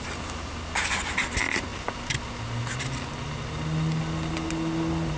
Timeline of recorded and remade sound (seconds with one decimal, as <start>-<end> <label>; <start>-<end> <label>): 0.0-5.2 recorded

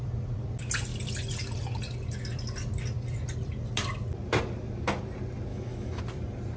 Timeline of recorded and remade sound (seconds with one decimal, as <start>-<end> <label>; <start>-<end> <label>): 0.0-5.5 recorded; 5.5-6.0 remade; 6.0-6.6 recorded

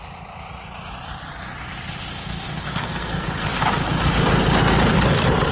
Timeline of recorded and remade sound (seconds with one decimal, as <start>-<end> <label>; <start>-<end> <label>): 0.0-2.6 recorded; 2.6-3.6 remade; 3.6-5.5 recorded

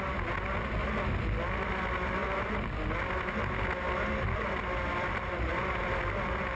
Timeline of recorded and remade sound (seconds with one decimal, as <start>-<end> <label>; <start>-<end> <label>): 0.0-6.5 recorded

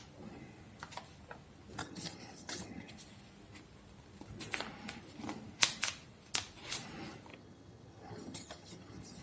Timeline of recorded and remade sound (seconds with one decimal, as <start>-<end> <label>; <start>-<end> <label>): 0.0-1.8 recorded; 1.8-2.9 remade; 2.9-7.3 recorded; 7.3-9.2 remade